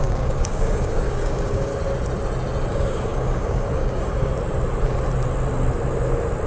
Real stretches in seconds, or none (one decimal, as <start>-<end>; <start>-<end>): 1.7-2.7; 4.3-6.5